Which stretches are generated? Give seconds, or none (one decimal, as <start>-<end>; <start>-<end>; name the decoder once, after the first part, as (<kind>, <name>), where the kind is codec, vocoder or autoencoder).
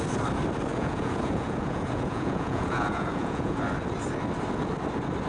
0.7-3.6 (vocoder, Vocos)